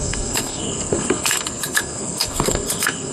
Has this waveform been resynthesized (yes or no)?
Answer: yes